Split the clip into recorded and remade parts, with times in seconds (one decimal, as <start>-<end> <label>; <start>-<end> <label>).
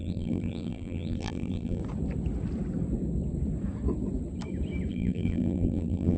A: 0.0-1.8 remade; 1.8-4.9 recorded; 4.9-6.2 remade